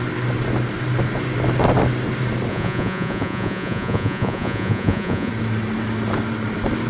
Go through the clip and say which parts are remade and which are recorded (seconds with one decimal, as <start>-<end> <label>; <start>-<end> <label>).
0.0-2.5 recorded; 2.5-5.3 remade; 5.3-6.9 recorded